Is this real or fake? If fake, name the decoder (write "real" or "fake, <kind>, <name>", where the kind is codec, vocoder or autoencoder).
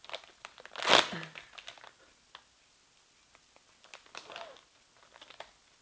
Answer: real